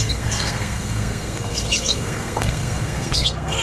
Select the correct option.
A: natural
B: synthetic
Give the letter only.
B